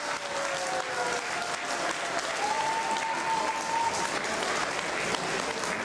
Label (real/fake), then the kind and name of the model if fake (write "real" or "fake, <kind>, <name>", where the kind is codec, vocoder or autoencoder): real